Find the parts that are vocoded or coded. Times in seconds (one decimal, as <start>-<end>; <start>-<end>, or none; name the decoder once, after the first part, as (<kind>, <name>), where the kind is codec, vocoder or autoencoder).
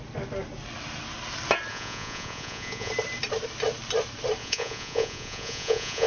1.7-2.9 (vocoder, Vocos); 4.4-6.1